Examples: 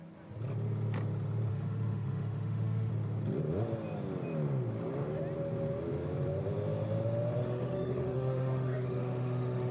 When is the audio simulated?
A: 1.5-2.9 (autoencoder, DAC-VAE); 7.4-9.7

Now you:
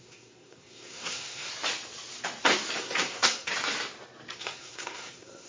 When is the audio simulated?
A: 0.0-1.5 (codec, SNAC); 2.8-3.5; 4.4-5.5

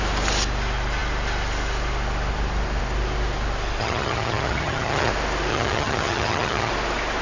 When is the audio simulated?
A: 3.8-5.1 (vocoder, HiFi-GAN); 5.5-6.7

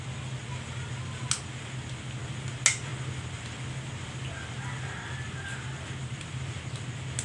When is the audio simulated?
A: none

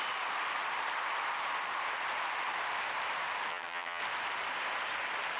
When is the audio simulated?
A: 3.5-4.0 (vocoder, HiFi-GAN)

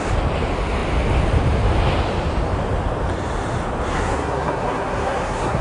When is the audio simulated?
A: 3.9-5.6 (codec, SNAC)